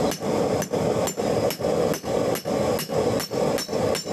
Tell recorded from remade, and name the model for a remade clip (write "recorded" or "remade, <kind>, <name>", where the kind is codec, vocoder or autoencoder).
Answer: recorded